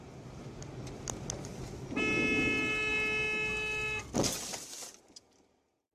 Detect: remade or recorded recorded